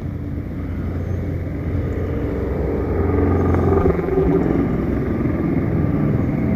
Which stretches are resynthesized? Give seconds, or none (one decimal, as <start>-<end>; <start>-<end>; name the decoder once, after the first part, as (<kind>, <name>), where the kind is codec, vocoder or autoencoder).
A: 3.8-4.4 (vocoder, BigVGAN v2)